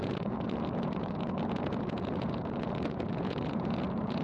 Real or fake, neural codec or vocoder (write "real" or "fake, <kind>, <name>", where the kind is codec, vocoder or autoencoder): fake, vocoder, Vocos